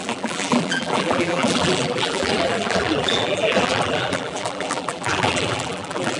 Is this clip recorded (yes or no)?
no